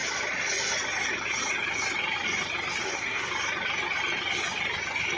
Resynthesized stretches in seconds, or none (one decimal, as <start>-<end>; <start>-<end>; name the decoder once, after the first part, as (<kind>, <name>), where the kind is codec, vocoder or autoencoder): 2.8-3.3 (codec, SNAC)

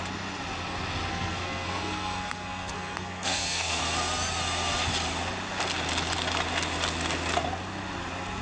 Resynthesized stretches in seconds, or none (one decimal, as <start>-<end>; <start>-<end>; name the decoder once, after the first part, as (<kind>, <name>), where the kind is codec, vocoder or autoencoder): 1.1-3.8 (codec, SNAC)

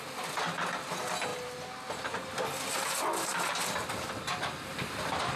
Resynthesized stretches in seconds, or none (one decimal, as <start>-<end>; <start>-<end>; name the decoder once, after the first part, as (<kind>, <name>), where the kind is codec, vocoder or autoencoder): none

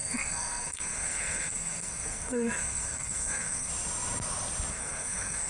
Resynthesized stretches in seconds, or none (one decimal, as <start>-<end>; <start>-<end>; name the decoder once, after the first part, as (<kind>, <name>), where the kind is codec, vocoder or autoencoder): 0.0-3.7 (codec, SNAC); 4.7-5.5

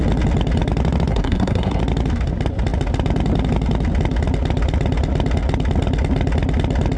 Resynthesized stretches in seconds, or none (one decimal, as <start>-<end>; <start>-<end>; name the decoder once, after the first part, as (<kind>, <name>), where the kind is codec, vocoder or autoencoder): 1.1-1.8 (codec, SNAC)